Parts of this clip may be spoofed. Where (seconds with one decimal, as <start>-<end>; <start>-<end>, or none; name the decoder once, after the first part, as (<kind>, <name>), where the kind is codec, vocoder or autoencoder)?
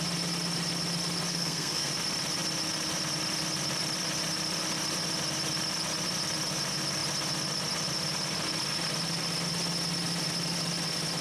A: 1.3-1.9 (codec, SNAC)